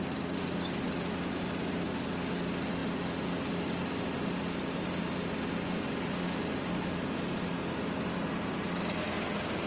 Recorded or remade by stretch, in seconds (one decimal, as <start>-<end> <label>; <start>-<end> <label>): 0.0-9.7 recorded